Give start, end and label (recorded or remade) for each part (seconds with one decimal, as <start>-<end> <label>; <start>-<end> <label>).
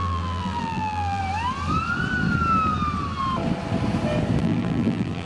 0.0-1.2 remade; 1.2-4.4 recorded; 4.4-5.3 remade